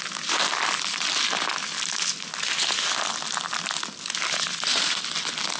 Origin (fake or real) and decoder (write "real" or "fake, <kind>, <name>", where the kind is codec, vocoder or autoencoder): real